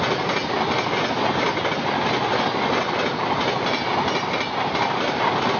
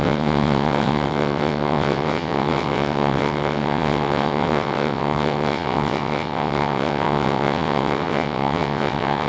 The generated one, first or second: second